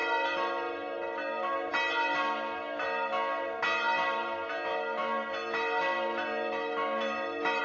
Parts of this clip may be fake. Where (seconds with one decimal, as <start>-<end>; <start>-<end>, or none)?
none